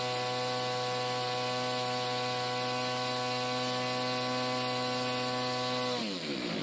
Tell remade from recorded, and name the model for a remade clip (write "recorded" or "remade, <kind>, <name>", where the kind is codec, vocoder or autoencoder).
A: recorded